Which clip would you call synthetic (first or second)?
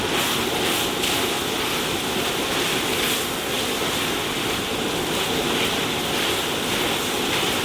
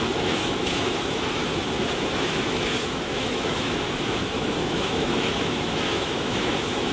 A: second